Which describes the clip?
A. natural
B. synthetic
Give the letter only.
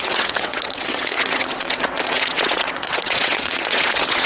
B